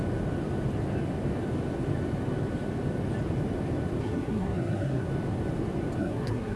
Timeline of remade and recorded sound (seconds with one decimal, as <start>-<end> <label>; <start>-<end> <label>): 0.0-4.0 recorded; 4.0-5.1 remade; 5.1-6.0 recorded; 6.0-6.6 remade